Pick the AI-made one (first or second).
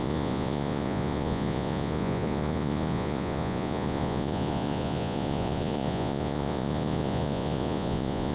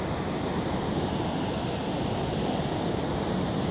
first